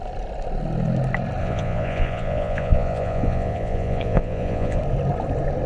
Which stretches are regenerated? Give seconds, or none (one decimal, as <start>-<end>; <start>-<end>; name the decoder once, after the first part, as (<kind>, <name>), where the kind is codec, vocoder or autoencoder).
1.4-4.8 (vocoder, Vocos)